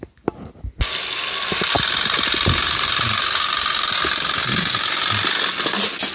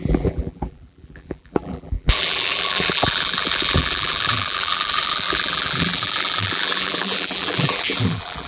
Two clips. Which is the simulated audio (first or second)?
second